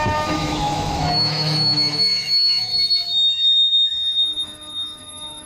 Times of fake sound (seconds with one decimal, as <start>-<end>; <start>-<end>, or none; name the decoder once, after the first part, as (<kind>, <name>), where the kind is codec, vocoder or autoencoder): 0.0-2.7 (autoencoder, DAC-VAE); 3.3-5.5